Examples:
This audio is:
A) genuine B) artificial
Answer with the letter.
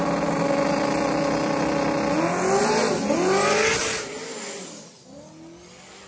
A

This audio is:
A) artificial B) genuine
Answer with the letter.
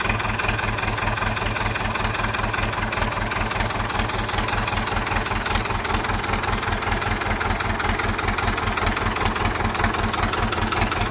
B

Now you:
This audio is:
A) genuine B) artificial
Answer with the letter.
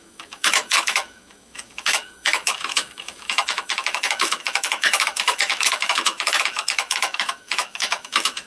B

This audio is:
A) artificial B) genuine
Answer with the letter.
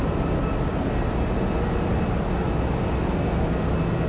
B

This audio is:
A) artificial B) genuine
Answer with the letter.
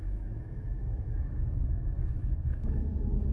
A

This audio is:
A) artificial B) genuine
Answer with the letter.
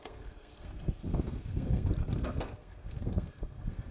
A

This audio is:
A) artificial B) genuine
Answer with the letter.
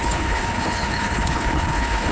A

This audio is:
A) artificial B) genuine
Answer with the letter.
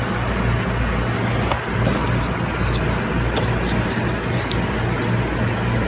B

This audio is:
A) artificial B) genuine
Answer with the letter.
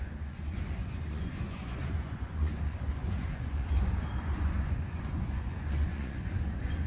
A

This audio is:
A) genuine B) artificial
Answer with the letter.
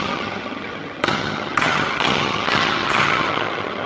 B